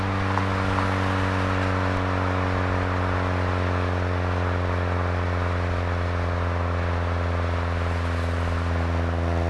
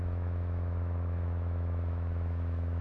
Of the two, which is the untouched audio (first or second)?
first